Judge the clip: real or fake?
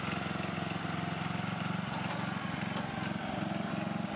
real